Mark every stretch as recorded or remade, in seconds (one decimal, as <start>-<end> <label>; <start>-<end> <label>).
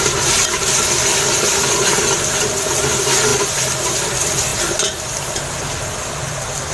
0.0-6.7 recorded